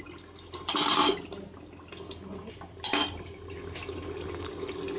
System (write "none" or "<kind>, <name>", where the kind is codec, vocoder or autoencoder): none